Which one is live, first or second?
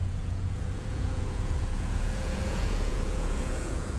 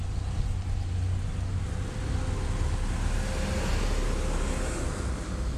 second